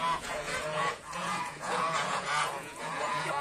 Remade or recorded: remade